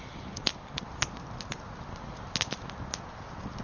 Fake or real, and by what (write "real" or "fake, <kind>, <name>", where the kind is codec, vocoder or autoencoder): real